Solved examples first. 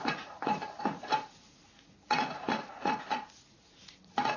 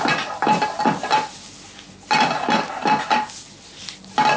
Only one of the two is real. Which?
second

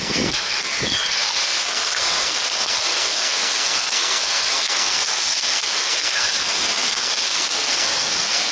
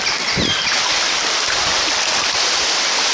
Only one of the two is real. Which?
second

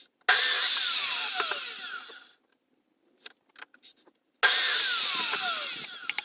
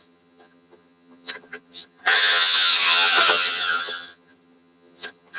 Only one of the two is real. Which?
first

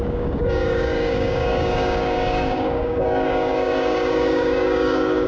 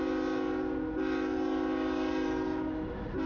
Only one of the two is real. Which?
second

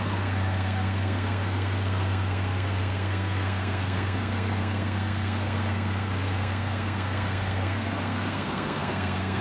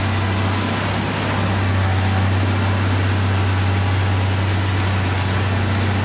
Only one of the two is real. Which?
second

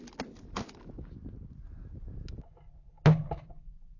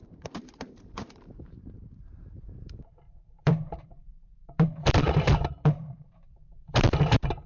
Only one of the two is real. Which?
first